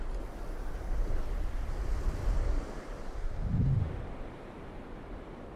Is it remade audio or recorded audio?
recorded